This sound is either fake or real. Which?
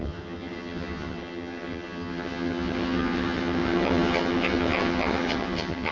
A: fake